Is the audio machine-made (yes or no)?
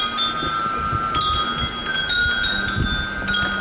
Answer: no